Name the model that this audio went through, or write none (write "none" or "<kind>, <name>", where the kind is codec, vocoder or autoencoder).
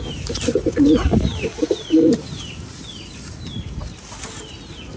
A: none